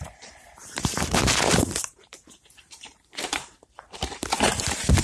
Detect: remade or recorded remade